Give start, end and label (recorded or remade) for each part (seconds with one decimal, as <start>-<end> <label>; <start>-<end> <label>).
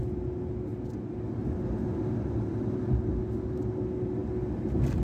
0.0-5.0 recorded